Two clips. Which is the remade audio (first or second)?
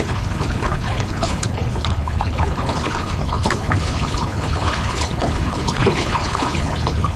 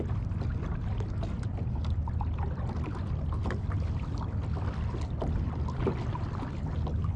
first